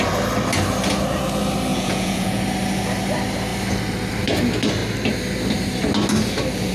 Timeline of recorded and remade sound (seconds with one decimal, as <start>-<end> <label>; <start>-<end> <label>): 0.0-1.7 recorded; 1.7-2.4 remade; 2.4-6.7 recorded